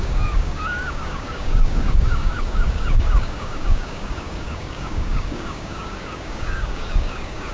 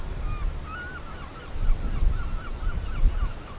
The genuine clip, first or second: second